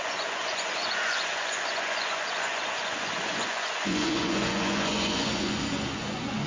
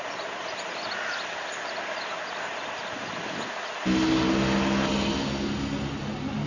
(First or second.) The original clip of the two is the second